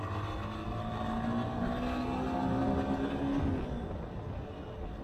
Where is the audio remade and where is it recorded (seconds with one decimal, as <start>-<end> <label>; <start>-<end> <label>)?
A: 0.0-5.0 recorded